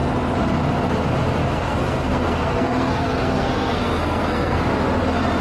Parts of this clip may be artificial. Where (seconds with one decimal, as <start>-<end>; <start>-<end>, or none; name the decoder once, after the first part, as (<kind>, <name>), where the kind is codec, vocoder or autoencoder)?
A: 1.4-4.6 (codec, SNAC)